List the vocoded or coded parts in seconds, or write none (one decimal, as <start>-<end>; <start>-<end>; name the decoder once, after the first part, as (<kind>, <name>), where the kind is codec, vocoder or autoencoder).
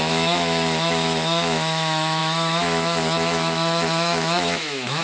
0.0-5.0 (autoencoder, DAC-VAE)